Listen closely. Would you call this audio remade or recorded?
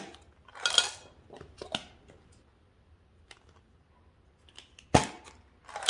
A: recorded